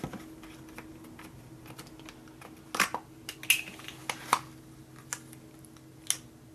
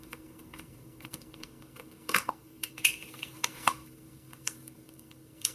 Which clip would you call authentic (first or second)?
first